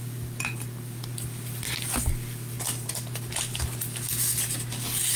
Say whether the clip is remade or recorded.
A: recorded